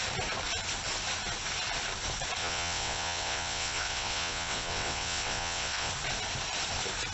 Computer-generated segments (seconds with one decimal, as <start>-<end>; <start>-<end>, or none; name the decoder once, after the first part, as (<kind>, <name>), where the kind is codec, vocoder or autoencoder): 2.4-5.9 (vocoder, WaveNeXt)